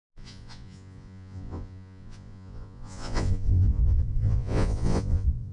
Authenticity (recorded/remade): remade